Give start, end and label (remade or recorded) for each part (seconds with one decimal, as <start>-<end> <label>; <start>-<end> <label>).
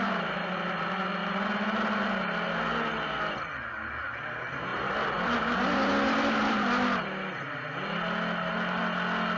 0.0-9.4 recorded